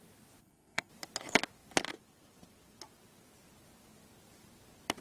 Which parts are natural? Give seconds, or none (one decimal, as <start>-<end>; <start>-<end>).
0.0-0.4; 0.9-5.0